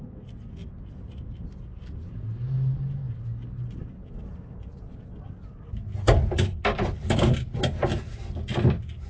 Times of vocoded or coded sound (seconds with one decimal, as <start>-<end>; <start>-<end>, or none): none